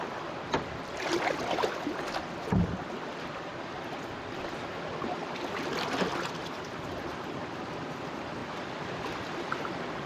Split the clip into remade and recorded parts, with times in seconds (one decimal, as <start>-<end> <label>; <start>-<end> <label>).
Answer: 0.0-10.1 recorded